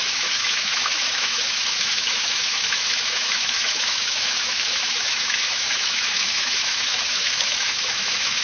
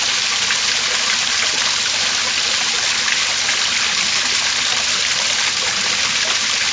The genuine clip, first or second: second